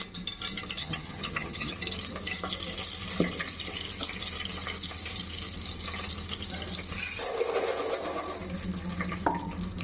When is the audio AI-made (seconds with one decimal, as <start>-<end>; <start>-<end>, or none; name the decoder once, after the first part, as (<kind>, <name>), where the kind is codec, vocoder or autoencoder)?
0.8-1.7 (vocoder, HiFi-GAN)